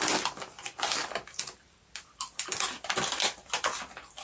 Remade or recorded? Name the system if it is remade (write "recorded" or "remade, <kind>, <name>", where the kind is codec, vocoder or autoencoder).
recorded